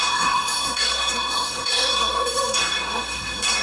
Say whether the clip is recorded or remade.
remade